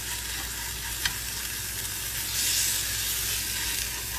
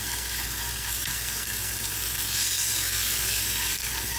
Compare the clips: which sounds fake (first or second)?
second